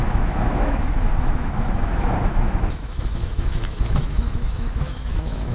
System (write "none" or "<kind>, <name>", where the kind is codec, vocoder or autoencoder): autoencoder, DAC-VAE